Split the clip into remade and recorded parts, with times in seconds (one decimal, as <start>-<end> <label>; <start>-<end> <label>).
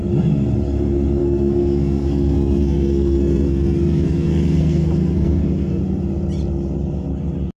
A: 0.0-1.2 recorded; 1.2-5.8 remade; 5.8-7.6 recorded